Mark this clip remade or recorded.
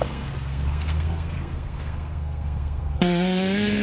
remade